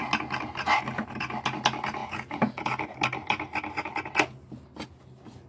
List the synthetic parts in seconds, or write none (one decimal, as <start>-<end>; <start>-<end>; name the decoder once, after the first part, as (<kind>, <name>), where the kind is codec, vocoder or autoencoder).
2.0-2.6 (vocoder, Vocos)

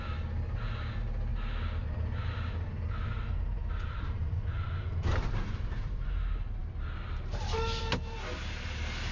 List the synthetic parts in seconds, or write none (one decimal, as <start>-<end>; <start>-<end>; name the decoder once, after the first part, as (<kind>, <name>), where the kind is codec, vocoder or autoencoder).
3.6-5.3 (vocoder, BigVGAN v2); 6.6-7.8

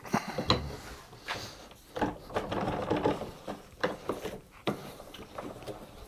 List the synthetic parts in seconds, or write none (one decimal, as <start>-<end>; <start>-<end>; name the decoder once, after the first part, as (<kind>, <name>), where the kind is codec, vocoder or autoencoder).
3.2-6.1 (vocoder, BigVGAN v2)

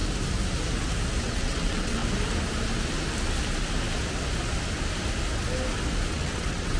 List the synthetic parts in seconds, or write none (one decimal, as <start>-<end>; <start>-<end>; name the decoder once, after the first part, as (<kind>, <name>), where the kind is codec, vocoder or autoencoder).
1.2-2.0 (vocoder, WaveNeXt); 6.1-6.8